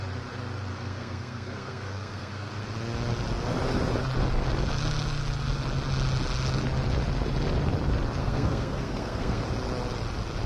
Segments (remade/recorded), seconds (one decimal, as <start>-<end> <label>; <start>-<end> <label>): 0.0-0.7 recorded; 0.7-2.5 remade; 2.5-8.2 recorded; 8.2-9.4 remade; 9.4-10.5 recorded